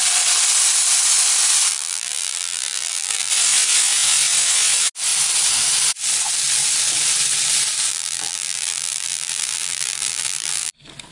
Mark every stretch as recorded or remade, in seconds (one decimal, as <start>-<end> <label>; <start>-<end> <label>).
0.0-1.7 recorded; 1.7-3.3 remade; 3.3-7.9 recorded; 7.9-10.7 remade; 10.7-11.1 recorded